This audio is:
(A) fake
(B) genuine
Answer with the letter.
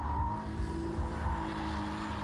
B